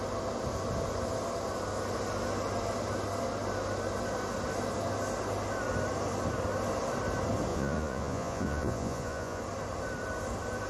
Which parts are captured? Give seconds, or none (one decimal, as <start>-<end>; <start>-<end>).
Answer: 0.0-7.5; 9.4-10.7